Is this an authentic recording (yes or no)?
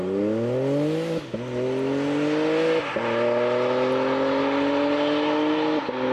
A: yes